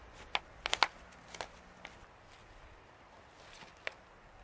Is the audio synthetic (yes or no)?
no